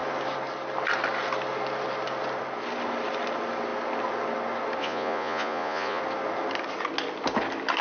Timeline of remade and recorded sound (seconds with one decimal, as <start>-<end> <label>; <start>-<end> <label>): 0.0-4.8 recorded; 4.8-6.0 remade; 6.0-7.8 recorded